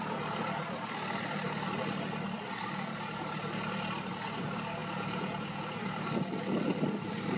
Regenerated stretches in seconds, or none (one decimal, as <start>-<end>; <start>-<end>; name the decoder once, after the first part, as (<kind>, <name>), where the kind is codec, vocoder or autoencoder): 4.8-5.8 (vocoder, Vocos)